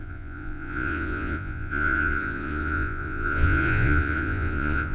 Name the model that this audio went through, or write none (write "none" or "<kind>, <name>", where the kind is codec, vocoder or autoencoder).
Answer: vocoder, Vocos